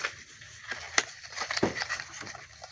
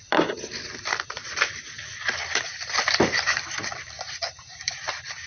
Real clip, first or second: first